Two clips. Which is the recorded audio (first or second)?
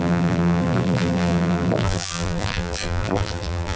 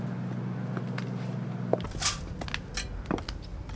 second